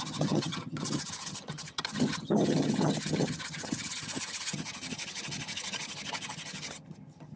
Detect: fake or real fake